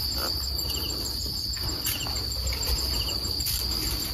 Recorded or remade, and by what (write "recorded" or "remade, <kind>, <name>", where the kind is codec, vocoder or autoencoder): recorded